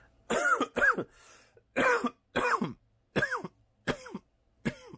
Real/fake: real